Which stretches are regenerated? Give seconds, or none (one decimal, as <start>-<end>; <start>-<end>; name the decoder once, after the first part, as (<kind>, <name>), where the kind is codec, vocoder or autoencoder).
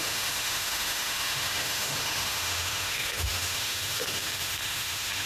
0.0-5.3 (autoencoder, DAC-VAE)